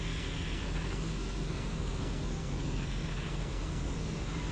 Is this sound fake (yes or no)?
yes